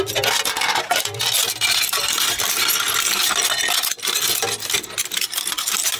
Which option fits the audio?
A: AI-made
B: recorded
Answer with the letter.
B